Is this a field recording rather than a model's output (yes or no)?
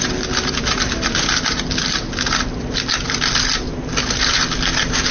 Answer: yes